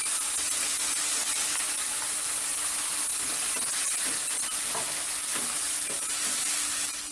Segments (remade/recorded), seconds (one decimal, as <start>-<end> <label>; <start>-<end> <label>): 0.0-2.1 remade; 2.1-7.1 recorded